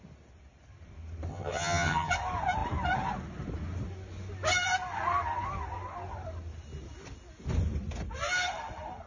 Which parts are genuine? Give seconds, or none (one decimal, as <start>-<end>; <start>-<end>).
0.0-1.3; 2.1-9.1